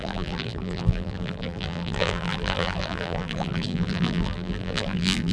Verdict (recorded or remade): remade